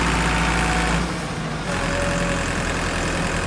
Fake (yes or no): no